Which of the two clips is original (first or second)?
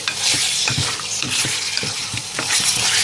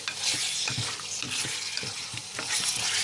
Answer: second